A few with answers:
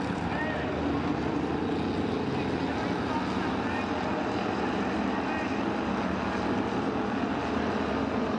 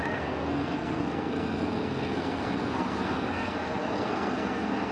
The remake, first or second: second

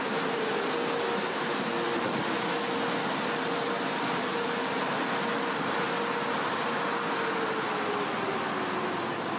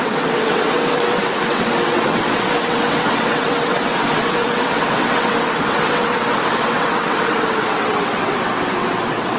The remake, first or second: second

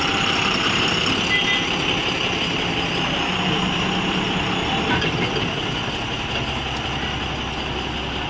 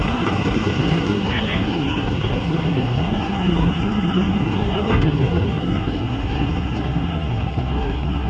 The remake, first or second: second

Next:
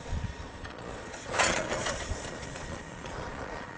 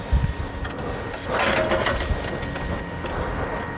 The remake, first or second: first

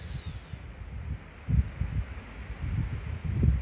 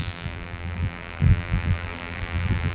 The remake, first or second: second